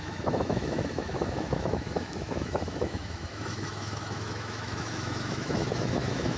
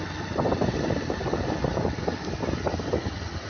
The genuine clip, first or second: second